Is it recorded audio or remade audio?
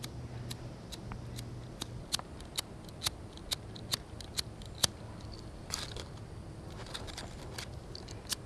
recorded